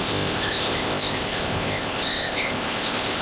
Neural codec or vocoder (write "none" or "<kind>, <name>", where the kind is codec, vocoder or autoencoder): codec, ZipCodec